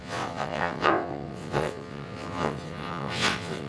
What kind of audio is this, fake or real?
fake